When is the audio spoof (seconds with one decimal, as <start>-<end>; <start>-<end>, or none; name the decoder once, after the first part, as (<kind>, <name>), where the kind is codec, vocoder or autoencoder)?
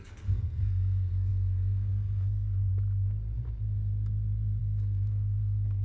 0.0-2.7 (codec, SNAC); 4.6-5.8